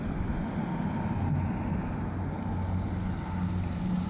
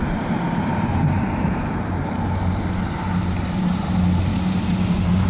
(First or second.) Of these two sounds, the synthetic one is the second